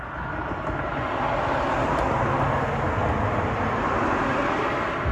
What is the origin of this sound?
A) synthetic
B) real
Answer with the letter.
B